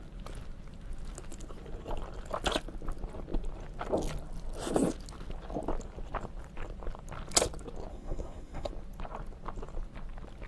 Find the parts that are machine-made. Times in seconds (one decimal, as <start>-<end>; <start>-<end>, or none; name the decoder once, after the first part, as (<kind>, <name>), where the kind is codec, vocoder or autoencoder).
7.9-8.7 (codec, SNAC)